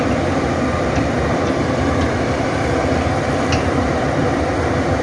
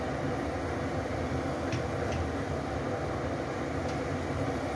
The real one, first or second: second